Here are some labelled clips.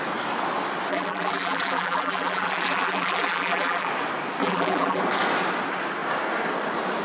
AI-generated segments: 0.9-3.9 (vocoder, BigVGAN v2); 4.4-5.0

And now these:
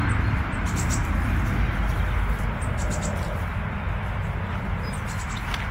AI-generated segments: none

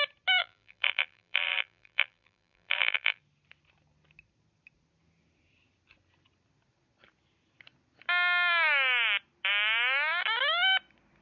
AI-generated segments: 0.4-3.2 (vocoder, BigVGAN v2)

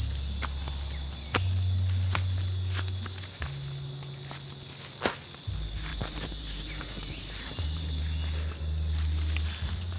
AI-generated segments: 5.9-8.0 (vocoder, BigVGAN v2)

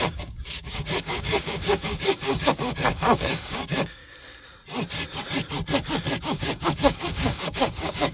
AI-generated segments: 0.0-4.0 (codec, DAC); 6.2-8.1

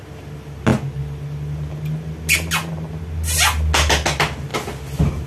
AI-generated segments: none

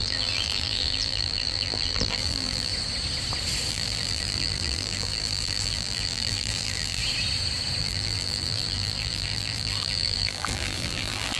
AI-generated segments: 0.0-2.7 (vocoder, BigVGAN v2); 3.7-7.0; 7.8-11.4